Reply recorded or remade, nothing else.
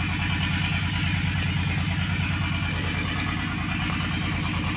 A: recorded